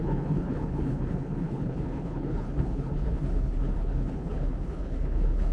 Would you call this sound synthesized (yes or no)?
yes